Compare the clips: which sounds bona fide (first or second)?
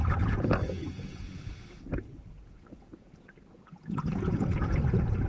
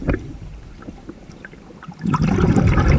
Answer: second